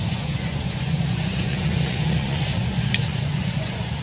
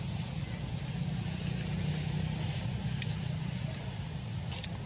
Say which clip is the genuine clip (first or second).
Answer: second